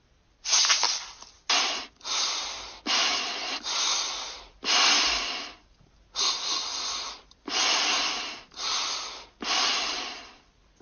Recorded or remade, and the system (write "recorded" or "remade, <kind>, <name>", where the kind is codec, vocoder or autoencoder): recorded